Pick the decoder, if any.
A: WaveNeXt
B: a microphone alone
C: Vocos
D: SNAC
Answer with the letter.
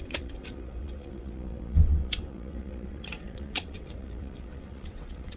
A